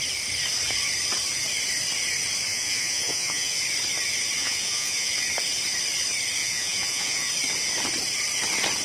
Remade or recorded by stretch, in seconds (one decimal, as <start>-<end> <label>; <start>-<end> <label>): 0.0-2.5 recorded; 2.5-3.6 remade; 3.6-4.4 recorded; 4.4-5.1 remade; 5.1-6.4 recorded; 6.4-7.3 remade; 7.3-8.8 recorded